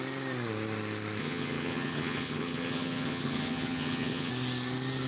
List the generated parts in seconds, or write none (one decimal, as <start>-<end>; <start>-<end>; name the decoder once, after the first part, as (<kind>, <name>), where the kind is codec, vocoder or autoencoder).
1.2-4.3 (vocoder, HiFi-GAN)